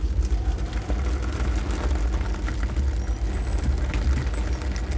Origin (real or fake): real